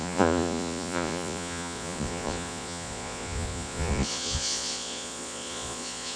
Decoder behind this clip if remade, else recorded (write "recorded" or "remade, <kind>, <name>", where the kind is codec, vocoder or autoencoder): remade, vocoder, Vocos